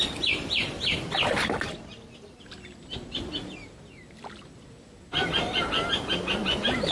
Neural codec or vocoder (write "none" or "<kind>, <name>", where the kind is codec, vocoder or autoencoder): none